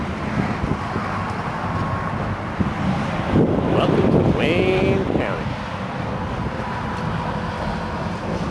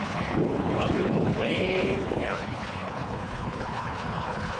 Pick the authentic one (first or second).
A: first